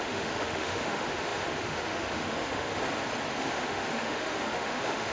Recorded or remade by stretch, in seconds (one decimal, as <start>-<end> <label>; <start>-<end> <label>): 0.0-2.7 remade; 2.7-3.4 recorded; 3.4-5.1 remade